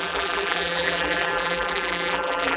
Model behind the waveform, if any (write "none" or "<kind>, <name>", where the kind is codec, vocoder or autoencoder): vocoder, BigVGAN v2